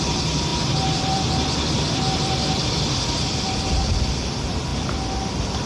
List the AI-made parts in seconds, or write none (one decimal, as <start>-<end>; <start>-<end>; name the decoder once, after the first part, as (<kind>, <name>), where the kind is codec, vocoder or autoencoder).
0.5-3.9 (vocoder, BigVGAN v2)